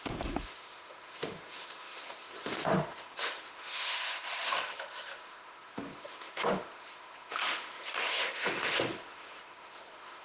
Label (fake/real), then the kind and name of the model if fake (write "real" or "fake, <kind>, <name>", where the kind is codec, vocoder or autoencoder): fake, autoencoder, DAC-VAE